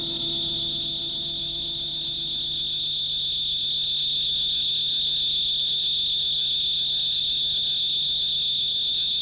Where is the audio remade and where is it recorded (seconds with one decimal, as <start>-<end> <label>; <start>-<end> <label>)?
0.0-9.2 recorded